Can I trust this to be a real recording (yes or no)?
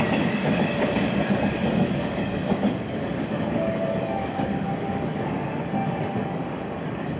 no